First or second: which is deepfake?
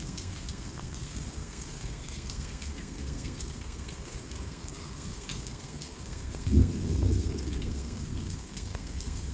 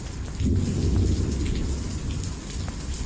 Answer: first